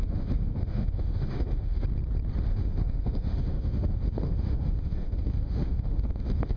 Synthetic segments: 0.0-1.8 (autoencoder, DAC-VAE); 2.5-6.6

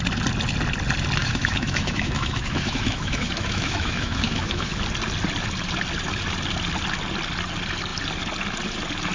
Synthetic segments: 1.2-4.8 (autoencoder, DAC-VAE)

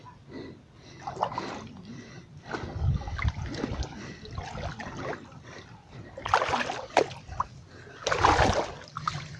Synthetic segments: none

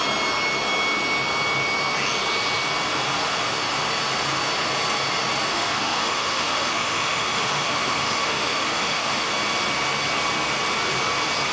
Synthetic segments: 5.5-9.3 (autoencoder, DAC-VAE)

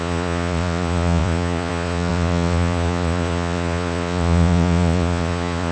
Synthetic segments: 0.0-5.7 (vocoder, Vocos)

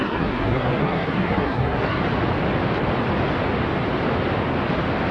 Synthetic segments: 0.0-2.0 (codec, SNAC)